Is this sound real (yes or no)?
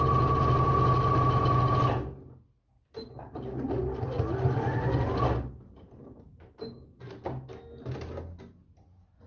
yes